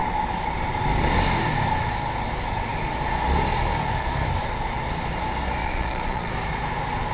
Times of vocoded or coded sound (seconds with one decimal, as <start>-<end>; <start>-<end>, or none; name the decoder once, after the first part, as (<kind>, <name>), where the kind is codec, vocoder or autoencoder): 5.6-6.3 (vocoder, Vocos)